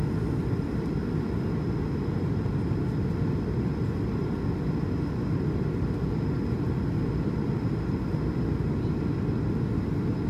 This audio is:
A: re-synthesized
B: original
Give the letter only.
B